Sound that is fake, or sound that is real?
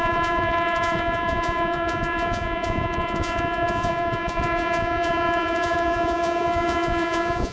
fake